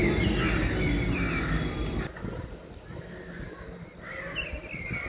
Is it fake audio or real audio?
real